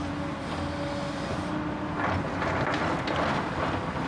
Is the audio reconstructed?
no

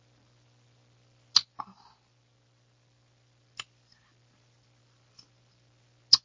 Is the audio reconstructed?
no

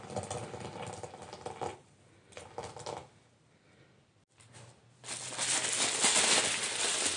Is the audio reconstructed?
no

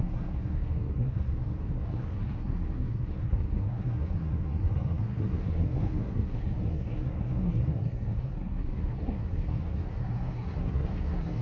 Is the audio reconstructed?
yes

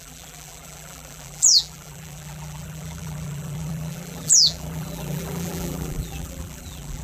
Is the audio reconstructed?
yes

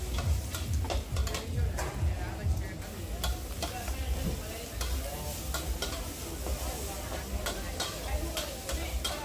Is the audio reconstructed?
no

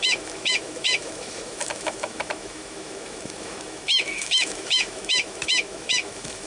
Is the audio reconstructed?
yes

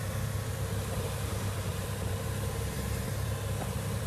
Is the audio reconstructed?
yes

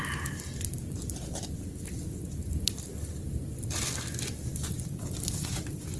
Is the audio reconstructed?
no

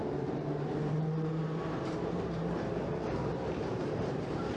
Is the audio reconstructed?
yes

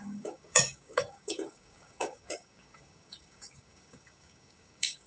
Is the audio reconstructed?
yes